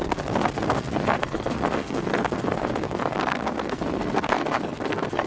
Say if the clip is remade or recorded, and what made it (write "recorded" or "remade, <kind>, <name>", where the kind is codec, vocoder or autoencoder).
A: remade, codec, SNAC